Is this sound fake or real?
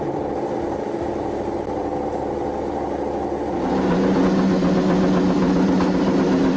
real